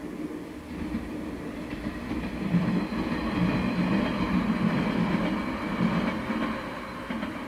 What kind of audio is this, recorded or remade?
recorded